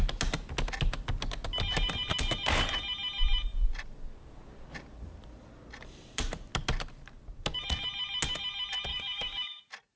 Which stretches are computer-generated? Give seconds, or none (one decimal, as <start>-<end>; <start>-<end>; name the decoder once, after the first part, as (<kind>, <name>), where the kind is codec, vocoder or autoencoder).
8.9-9.6 (codec, DAC)